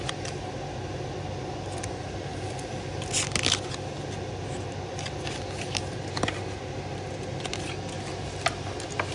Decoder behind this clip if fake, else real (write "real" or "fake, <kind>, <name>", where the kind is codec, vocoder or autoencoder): real